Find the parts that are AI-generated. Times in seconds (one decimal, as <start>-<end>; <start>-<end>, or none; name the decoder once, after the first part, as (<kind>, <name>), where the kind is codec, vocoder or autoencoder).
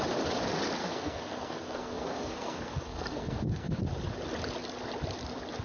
0.8-3.8 (codec, SNAC)